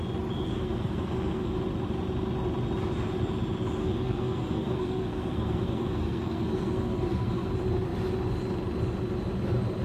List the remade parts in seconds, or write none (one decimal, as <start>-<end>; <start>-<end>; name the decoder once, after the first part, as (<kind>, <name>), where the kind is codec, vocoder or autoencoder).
0.5-1.6 (codec, SNAC); 3.8-7.5